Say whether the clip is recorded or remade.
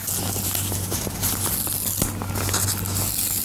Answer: recorded